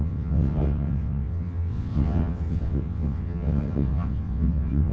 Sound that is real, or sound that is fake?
fake